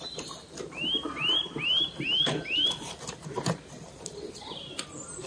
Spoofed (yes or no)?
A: yes